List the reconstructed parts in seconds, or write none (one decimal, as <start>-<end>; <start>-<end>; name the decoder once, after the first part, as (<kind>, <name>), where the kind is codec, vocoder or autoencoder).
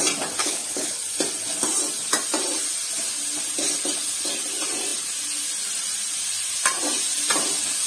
0.4-1.0 (codec, HILCodec)